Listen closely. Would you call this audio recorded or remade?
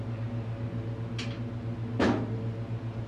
recorded